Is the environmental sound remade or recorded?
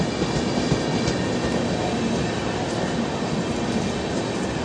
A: recorded